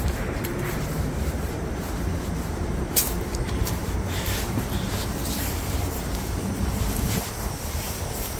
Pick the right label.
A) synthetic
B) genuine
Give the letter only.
A